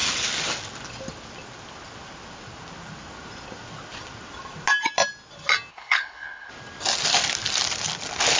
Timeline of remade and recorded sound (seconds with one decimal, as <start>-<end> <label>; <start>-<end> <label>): 0.0-5.7 recorded; 5.7-6.5 remade; 6.5-8.4 recorded

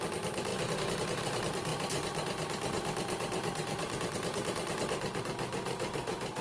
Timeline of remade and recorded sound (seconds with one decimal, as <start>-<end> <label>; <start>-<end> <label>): 0.0-0.5 remade; 0.5-1.2 recorded; 1.2-6.4 remade

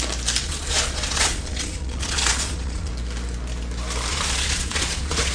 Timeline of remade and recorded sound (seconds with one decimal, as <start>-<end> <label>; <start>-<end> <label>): 0.0-0.4 recorded; 0.4-2.9 remade; 2.9-4.1 recorded; 4.1-5.3 remade

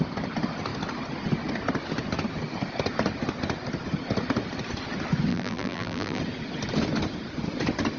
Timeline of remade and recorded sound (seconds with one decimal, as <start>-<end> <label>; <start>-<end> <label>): 0.0-5.3 recorded; 5.3-6.2 remade; 6.2-8.0 recorded

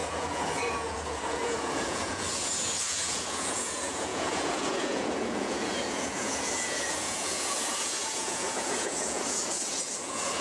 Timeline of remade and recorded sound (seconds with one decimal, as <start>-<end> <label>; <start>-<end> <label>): 0.0-10.4 remade

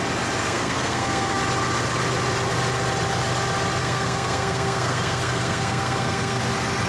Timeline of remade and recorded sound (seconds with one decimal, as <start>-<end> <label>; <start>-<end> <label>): 0.0-0.4 recorded; 0.4-1.4 remade; 1.4-3.8 recorded; 3.8-6.4 remade; 6.4-6.9 recorded

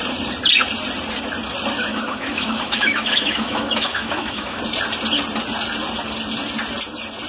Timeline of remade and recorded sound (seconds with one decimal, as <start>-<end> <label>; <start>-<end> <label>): 0.0-1.9 recorded; 1.9-4.6 remade; 4.6-7.3 recorded